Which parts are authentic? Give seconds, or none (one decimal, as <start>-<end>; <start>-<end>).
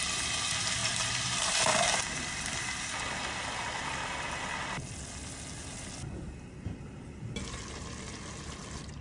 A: 0.0-9.0